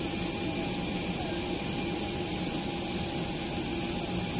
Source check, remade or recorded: recorded